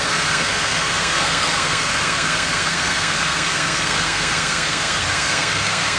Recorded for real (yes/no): no